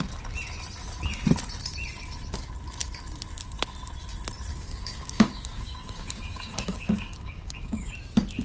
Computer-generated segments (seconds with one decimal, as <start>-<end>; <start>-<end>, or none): 4.5-7.9